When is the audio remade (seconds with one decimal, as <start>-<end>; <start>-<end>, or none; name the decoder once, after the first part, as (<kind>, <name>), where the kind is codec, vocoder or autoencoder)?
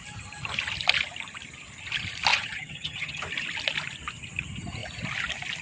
2.3-3.2 (vocoder, HiFi-GAN)